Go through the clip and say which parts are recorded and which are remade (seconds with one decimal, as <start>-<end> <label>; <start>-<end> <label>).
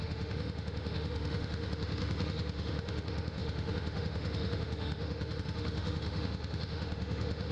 0.0-7.5 remade